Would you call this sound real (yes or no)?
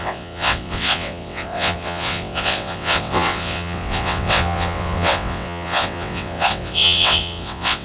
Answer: no